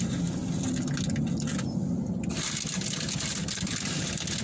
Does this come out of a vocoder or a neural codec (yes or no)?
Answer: no